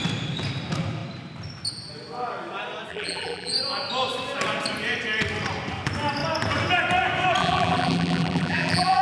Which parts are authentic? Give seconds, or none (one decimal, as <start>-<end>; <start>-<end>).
0.0-2.9; 3.5-7.4